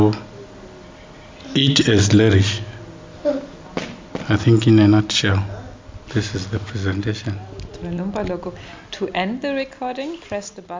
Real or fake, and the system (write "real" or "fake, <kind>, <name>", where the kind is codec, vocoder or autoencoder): real